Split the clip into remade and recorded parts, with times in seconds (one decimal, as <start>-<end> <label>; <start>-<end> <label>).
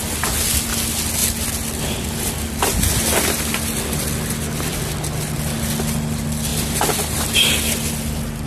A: 0.0-8.5 recorded